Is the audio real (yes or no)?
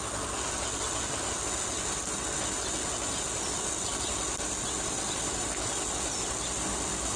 yes